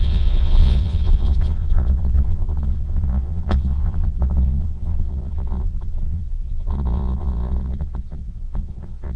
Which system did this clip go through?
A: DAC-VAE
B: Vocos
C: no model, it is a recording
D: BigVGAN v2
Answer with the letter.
B